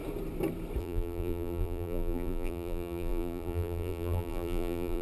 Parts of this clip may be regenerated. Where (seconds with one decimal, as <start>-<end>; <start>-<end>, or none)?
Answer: 0.8-5.0